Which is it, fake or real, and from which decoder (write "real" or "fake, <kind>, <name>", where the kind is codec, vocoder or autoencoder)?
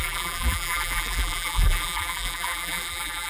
fake, vocoder, BigVGAN v2